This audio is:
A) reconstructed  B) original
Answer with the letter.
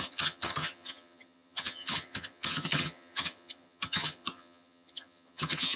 A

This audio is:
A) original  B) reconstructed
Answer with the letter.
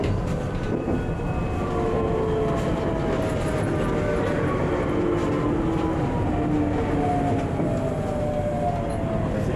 A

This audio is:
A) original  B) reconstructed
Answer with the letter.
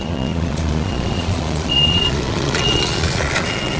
B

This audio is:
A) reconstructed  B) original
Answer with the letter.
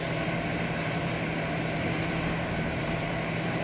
A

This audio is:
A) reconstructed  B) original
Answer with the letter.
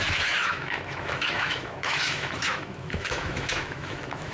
A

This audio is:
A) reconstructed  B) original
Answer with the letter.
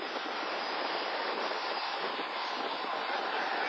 B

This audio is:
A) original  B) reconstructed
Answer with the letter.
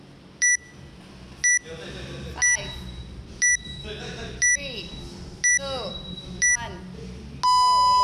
A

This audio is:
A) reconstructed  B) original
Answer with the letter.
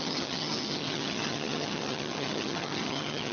A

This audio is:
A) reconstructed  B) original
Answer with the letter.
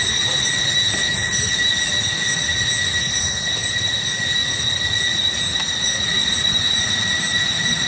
B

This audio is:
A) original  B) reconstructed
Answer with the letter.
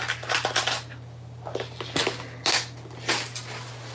A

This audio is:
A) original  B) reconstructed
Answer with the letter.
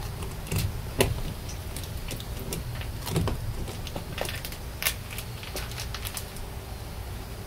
A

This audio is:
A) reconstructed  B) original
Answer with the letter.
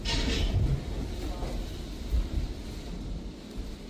B